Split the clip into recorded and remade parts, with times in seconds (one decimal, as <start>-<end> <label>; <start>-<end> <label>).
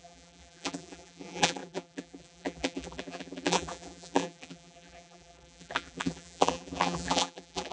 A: 0.0-7.7 remade